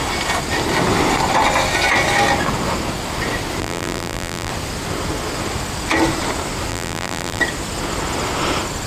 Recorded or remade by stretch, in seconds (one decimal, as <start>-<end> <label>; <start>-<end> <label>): 0.0-3.6 recorded; 3.6-4.5 remade; 4.5-6.7 recorded; 6.7-7.4 remade; 7.4-8.9 recorded